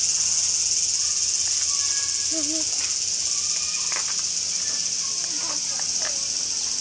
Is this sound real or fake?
real